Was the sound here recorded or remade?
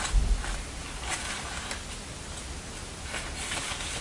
recorded